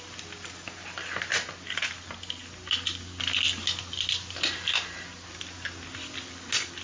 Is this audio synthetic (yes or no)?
no